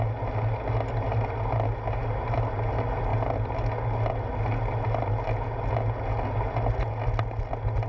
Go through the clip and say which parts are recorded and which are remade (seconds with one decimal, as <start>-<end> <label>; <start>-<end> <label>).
0.0-7.9 recorded